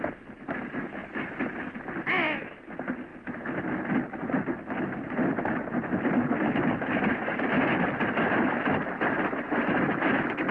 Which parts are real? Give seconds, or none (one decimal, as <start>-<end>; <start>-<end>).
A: 0.0-10.5